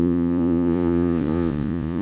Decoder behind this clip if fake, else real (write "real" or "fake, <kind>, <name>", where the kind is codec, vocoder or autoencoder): fake, vocoder, Vocos